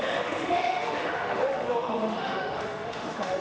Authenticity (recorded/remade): remade